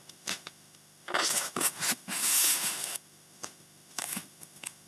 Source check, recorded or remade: remade